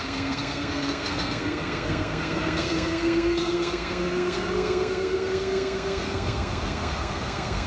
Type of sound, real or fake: fake